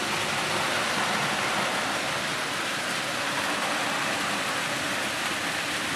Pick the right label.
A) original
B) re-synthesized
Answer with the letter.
A